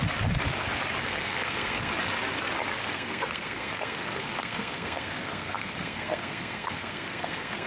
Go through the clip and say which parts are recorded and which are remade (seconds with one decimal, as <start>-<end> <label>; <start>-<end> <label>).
0.0-1.0 recorded; 1.0-1.9 remade; 1.9-2.8 recorded; 2.8-7.7 remade